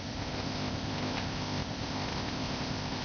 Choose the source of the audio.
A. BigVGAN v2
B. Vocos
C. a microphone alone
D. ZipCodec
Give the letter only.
D